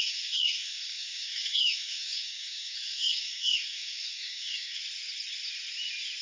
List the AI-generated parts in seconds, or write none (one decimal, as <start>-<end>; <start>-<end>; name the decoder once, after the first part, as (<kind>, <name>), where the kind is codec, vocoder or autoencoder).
0.0-4.8 (codec, DAC)